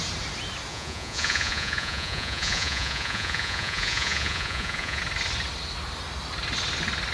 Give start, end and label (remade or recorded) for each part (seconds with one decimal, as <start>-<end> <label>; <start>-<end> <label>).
0.0-0.7 recorded; 0.7-5.0 remade; 5.0-7.1 recorded